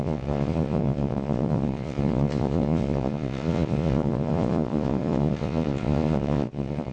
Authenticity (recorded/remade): remade